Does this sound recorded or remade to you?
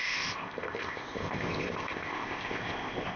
remade